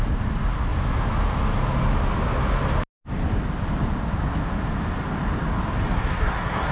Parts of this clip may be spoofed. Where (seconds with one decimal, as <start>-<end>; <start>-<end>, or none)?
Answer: 5.9-6.7